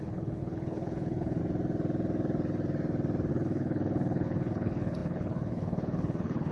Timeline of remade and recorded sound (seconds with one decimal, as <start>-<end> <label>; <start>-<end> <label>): 0.0-1.4 remade; 1.4-3.3 recorded; 3.3-6.5 remade